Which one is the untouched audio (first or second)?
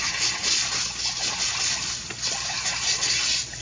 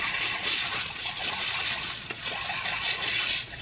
first